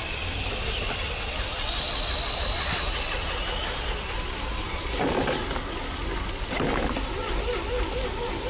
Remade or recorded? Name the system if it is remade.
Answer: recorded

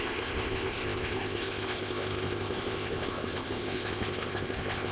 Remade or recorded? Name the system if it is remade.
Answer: remade, codec, ZipCodec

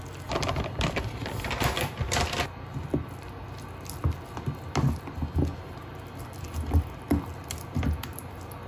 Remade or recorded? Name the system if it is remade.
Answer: recorded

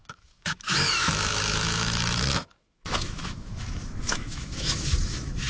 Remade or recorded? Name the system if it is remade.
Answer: remade, autoencoder, DAC-VAE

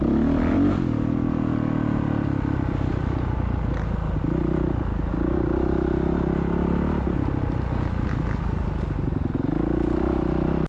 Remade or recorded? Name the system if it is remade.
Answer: recorded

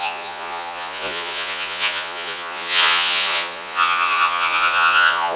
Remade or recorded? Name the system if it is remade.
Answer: remade, vocoder, Vocos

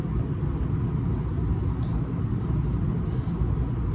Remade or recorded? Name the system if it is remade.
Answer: recorded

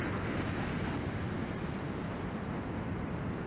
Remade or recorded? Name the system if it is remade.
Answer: recorded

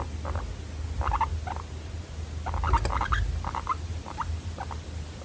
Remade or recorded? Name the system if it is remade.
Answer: recorded